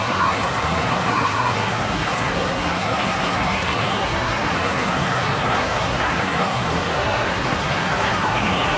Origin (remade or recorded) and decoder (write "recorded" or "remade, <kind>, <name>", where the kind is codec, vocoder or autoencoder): remade, codec, SNAC